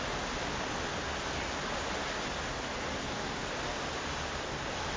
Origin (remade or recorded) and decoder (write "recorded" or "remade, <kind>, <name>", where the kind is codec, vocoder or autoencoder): recorded